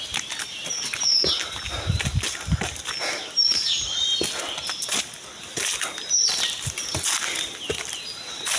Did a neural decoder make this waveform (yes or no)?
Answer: no